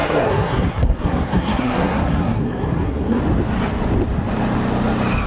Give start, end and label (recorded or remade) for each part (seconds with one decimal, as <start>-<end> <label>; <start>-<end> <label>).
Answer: 0.0-3.2 remade; 3.2-5.3 recorded